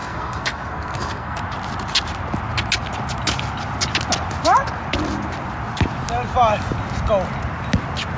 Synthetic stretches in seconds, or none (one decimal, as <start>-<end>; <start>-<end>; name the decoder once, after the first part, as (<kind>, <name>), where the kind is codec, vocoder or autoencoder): 0.0-1.4 (codec, SNAC)